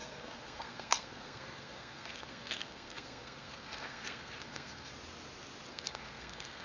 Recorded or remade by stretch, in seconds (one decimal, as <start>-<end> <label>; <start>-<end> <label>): 0.0-4.9 remade; 4.9-5.7 recorded; 5.7-6.6 remade